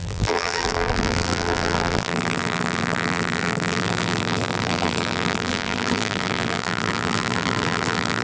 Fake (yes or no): yes